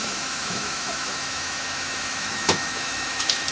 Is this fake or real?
fake